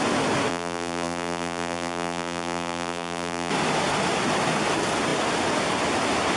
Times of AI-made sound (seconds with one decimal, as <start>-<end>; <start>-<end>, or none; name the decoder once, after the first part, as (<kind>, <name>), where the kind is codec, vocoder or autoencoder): 0.5-3.5 (vocoder, BigVGAN v2)